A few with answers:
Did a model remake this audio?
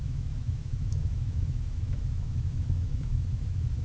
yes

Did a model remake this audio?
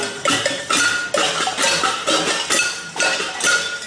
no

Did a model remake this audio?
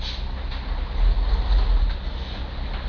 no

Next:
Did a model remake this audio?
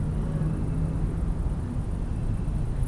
no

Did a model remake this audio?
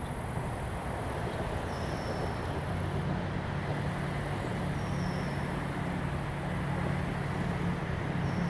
no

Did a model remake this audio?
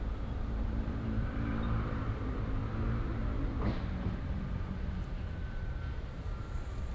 yes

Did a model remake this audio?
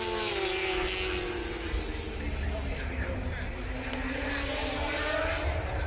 no